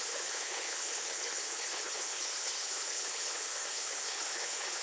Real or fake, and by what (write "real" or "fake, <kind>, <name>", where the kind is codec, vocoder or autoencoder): fake, codec, HILCodec